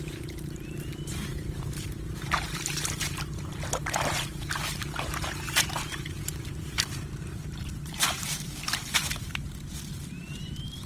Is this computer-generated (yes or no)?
yes